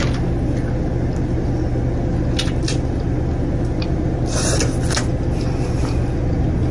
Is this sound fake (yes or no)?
no